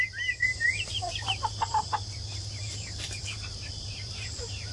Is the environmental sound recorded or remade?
remade